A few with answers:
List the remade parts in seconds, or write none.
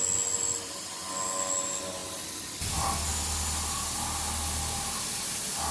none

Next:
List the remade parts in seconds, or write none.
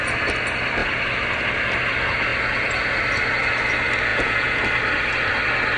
4.1-4.6 (vocoder, Vocos)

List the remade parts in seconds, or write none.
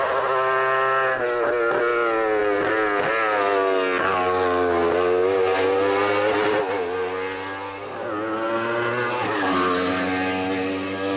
none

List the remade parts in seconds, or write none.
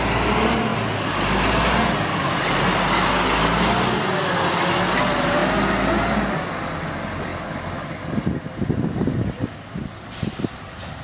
none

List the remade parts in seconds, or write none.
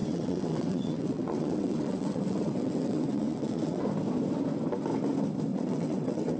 0.0-3.8 (vocoder, WaveNeXt); 5.5-6.4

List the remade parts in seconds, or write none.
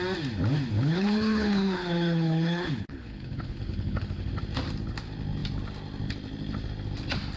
0.7-4.3 (codec, HILCodec)